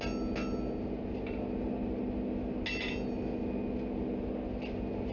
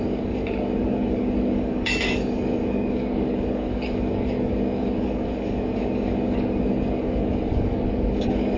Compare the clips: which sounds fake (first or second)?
second